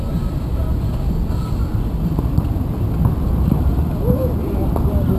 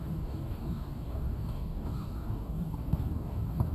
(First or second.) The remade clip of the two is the second